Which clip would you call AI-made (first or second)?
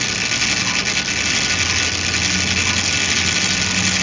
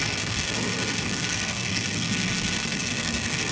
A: second